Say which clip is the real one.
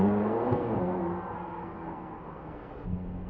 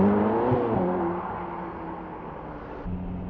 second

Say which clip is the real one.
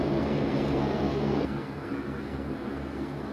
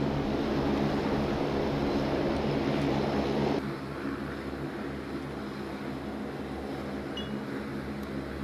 second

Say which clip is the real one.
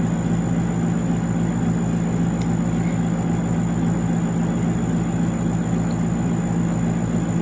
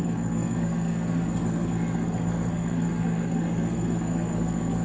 first